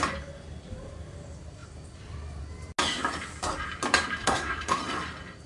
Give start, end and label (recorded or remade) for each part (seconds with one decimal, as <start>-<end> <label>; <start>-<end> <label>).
0.0-4.2 recorded; 4.2-4.8 remade; 4.8-5.5 recorded